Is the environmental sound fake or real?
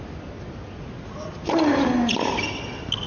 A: real